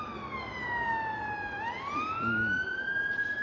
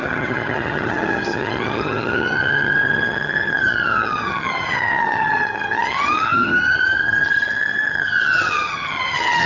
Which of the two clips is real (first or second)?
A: first